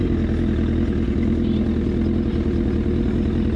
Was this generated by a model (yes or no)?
no